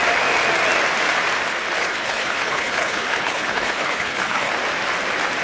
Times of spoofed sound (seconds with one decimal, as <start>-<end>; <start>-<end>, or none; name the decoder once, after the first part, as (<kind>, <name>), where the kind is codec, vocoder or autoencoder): 1.8-4.5 (codec, HILCodec)